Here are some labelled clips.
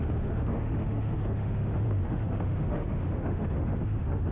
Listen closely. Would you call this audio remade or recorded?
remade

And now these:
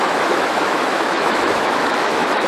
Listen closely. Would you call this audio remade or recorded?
remade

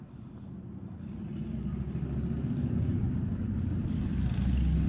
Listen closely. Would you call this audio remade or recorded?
recorded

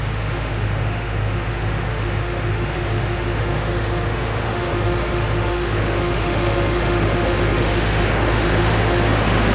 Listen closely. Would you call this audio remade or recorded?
remade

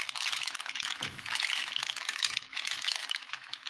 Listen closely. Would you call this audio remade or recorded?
remade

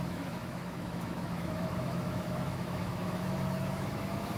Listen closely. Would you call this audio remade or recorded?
remade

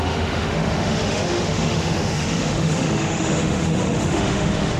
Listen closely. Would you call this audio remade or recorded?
remade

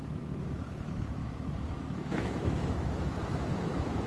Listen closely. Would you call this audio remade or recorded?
remade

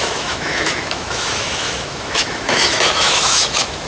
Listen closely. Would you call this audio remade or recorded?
remade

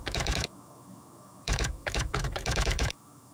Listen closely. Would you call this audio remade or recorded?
remade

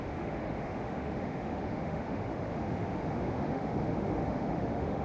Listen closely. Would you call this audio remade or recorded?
remade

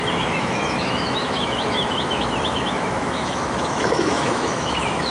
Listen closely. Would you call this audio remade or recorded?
remade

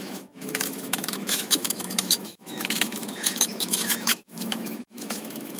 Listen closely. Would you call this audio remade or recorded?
remade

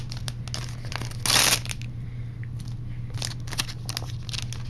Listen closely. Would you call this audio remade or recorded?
recorded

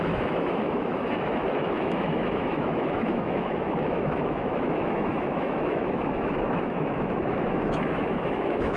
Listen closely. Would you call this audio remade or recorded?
remade